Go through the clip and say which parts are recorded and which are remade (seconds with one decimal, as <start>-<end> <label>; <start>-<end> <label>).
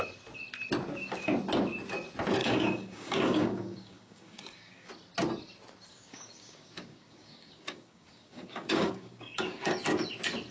0.0-2.4 recorded; 2.4-4.9 remade; 4.9-5.9 recorded; 5.9-9.7 remade; 9.7-10.5 recorded